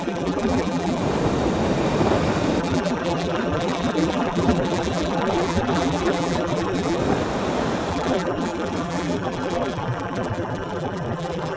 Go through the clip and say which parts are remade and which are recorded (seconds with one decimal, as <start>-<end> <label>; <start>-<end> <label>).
0.0-1.0 remade; 1.0-2.6 recorded; 2.6-7.0 remade; 7.0-7.9 recorded; 7.9-11.6 remade